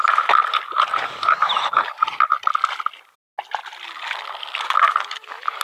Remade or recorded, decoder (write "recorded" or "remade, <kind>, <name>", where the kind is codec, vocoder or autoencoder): recorded